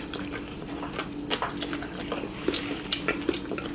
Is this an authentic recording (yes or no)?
yes